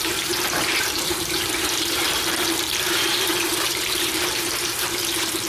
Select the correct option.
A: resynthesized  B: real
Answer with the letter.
A